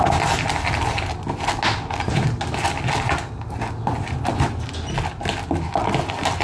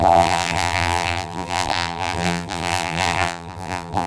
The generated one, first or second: second